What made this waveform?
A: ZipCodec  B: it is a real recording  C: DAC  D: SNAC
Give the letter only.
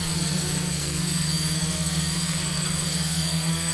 D